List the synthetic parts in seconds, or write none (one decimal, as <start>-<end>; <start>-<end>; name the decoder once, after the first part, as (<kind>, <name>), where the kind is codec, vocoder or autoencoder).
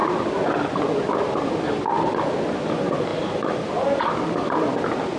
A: 0.0-0.8 (vocoder, BigVGAN v2); 3.1-3.7